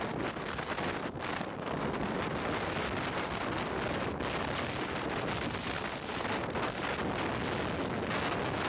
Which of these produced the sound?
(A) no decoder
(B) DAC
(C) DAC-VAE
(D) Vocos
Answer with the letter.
A